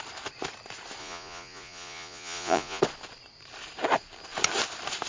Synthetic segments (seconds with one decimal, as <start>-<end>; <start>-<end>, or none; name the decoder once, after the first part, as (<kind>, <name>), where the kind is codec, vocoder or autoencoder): 1.0-2.8 (vocoder, Vocos)

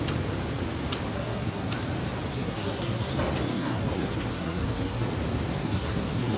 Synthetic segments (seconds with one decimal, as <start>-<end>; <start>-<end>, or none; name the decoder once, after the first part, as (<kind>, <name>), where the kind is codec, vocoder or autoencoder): 1.1-1.7 (codec, SNAC); 2.3-3.1; 3.5-5.1; 5.6-6.4

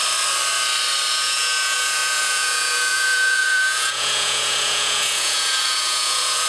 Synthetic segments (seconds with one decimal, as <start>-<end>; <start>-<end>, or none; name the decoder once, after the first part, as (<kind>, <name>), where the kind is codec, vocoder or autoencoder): 1.1-6.5 (vocoder, Vocos)

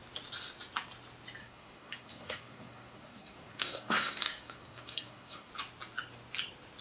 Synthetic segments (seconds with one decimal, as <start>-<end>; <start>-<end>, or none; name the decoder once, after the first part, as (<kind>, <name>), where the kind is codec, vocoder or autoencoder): 1.4-5.5 (codec, SNAC)

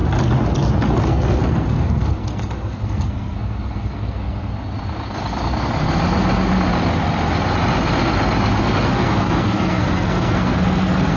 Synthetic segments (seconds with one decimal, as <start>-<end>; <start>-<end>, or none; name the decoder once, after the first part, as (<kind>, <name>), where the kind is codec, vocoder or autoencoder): 1.0-4.5 (codec, SNAC); 8.6-11.2

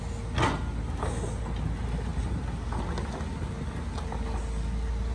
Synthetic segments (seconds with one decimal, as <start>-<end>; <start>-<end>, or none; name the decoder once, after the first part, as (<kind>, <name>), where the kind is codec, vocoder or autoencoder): none

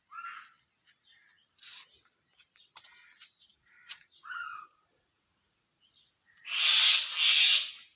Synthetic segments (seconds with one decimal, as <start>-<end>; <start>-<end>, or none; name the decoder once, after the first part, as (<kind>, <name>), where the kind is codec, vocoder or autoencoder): 3.5-6.6 (vocoder, Vocos)

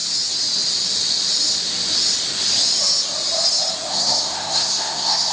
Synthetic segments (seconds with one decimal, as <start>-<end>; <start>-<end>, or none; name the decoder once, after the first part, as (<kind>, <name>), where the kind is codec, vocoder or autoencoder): 3.9-5.3 (codec, SNAC)